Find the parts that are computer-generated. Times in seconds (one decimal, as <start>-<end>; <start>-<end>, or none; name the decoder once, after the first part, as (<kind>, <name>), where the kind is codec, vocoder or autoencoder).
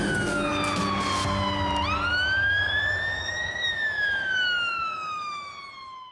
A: 2.1-5.5 (autoencoder, DAC-VAE)